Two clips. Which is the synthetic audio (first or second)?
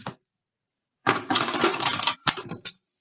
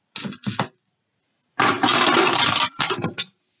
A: first